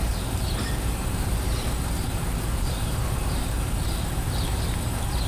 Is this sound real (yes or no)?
no